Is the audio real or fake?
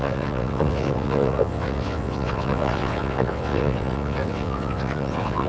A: fake